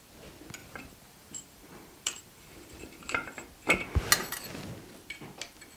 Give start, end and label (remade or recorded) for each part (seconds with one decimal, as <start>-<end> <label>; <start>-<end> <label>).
0.0-0.6 recorded; 0.6-3.0 remade; 3.0-5.8 recorded